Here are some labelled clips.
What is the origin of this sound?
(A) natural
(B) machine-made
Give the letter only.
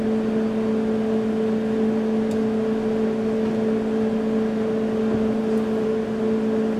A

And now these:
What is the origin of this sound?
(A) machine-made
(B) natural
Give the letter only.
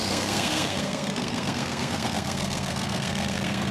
A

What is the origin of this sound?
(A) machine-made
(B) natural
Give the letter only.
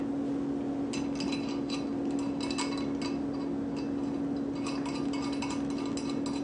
B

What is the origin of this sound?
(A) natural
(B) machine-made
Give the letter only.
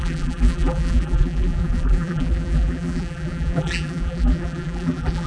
B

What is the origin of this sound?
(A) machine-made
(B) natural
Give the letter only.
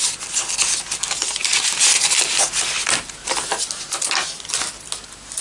B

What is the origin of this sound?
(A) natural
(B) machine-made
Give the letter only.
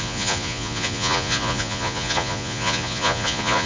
B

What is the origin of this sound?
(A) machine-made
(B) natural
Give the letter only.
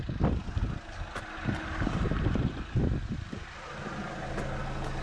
B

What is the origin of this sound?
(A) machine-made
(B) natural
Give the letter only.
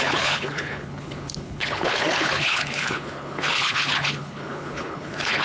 A